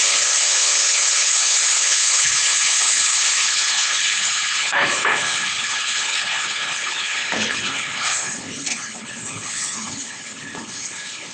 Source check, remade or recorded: remade